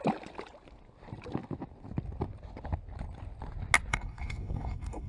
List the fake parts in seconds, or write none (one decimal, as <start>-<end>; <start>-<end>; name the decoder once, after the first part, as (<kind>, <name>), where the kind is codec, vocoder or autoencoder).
3.9-5.1 (codec, DAC)